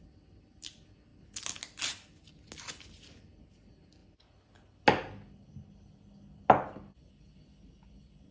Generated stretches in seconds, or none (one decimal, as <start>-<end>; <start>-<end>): none